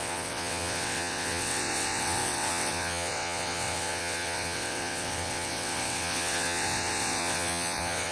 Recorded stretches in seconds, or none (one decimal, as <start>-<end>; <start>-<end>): none